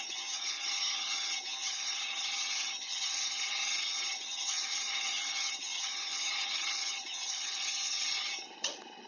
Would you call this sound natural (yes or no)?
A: no